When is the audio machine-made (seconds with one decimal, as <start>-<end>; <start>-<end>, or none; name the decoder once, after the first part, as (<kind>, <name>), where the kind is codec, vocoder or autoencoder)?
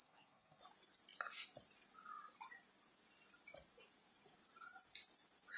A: 0.0-0.6 (codec, SNAC)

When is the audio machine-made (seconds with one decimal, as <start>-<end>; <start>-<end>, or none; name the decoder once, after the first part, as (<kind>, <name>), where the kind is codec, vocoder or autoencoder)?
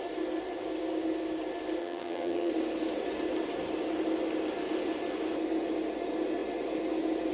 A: 1.8-2.5 (vocoder, HiFi-GAN)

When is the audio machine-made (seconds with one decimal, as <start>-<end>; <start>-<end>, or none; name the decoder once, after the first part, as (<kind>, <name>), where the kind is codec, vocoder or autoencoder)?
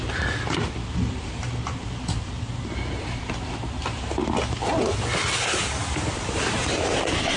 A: 5.8-7.0 (vocoder, BigVGAN v2)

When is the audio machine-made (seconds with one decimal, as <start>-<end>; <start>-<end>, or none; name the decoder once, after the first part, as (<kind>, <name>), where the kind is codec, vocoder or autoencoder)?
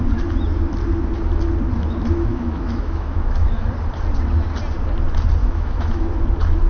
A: 2.3-3.5 (autoencoder, DAC-VAE); 5.4-6.2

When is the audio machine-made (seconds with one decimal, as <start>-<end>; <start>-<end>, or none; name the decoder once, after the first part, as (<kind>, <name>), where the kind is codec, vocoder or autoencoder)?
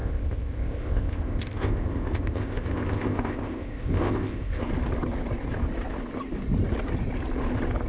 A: 0.0-4.7 (codec, ZipCodec)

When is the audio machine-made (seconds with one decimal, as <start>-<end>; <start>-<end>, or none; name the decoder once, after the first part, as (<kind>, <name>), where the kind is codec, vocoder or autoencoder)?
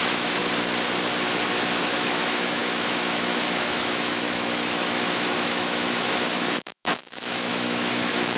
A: 0.0-0.4 (autoencoder, DAC-VAE); 1.8-8.4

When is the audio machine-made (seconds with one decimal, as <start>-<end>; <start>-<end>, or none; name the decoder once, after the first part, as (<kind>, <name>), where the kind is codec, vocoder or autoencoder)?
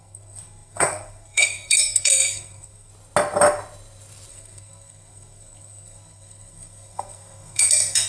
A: 0.0-2.9 (codec, SNAC); 4.3-8.1